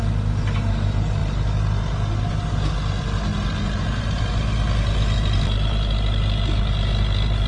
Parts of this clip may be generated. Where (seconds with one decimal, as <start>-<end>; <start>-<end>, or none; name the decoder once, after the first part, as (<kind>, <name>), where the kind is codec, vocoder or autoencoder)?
none

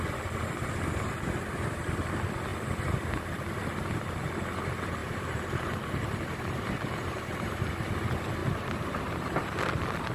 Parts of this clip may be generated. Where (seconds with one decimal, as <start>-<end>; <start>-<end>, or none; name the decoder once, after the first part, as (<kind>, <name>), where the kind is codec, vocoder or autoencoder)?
5.0-7.7 (vocoder, BigVGAN v2); 8.4-9.7

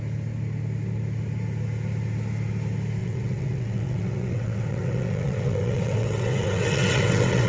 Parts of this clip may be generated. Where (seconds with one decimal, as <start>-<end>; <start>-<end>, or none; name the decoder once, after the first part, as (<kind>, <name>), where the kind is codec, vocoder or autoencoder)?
3.0-7.5 (vocoder, WaveNeXt)

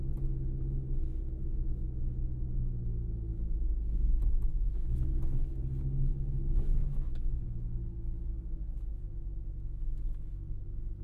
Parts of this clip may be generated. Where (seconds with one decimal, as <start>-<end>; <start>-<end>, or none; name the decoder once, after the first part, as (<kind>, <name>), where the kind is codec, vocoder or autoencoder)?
4.5-5.6 (autoencoder, DAC-VAE); 6.8-7.3